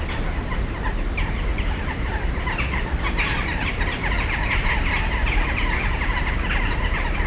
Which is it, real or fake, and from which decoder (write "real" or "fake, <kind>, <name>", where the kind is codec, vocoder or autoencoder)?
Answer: real